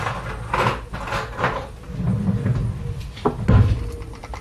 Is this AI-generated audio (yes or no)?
no